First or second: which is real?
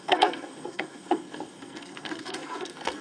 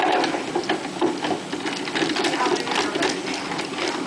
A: second